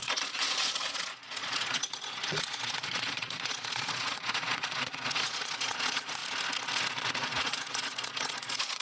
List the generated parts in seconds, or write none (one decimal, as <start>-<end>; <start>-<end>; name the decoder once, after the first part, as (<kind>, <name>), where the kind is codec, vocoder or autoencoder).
0.0-6.2 (vocoder, Vocos); 6.9-8.8